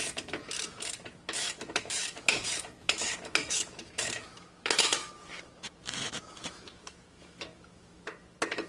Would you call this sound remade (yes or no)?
yes